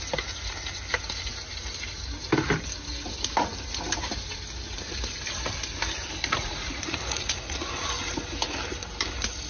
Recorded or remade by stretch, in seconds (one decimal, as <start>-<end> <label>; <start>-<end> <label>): 0.0-6.4 recorded; 6.4-7.7 remade; 7.7-9.5 recorded